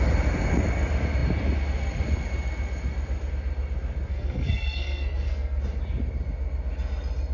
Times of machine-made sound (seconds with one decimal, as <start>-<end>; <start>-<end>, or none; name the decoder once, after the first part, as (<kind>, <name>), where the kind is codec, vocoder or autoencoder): 4.1-5.6 (codec, SNAC)